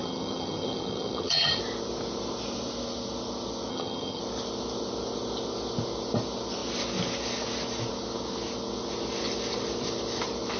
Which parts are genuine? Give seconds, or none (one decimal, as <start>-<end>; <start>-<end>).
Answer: 1.6-3.7; 4.2-10.6